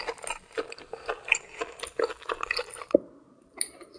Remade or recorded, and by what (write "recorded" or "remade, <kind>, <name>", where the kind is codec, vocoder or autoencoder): recorded